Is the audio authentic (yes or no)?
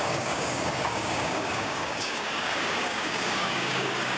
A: no